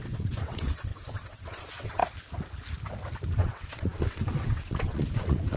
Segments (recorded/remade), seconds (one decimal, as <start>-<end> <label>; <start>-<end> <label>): 0.0-2.0 remade; 2.0-3.3 recorded; 3.3-5.6 remade